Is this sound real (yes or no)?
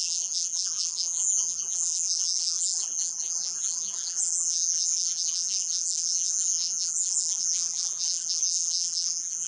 no